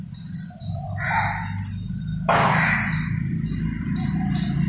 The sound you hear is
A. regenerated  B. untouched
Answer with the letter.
B